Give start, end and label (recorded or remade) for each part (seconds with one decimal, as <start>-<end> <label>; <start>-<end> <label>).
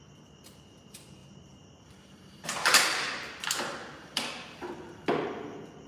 0.0-1.2 recorded; 1.2-4.7 remade; 4.7-5.9 recorded